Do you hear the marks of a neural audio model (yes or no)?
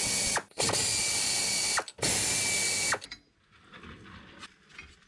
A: no